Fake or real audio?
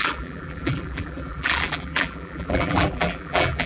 fake